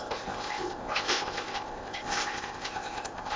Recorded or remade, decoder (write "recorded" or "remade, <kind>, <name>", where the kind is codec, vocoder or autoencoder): remade, codec, ZipCodec